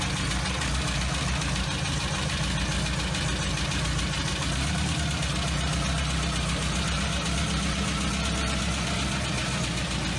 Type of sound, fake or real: real